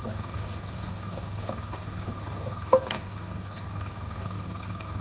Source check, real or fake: fake